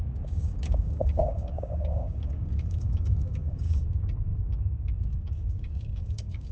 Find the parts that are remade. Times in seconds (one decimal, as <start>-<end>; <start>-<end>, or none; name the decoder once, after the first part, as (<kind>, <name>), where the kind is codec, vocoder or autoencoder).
0.0-6.5 (codec, DAC)